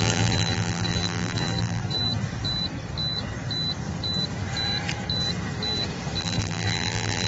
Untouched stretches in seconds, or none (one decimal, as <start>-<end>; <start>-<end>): 1.8-6.2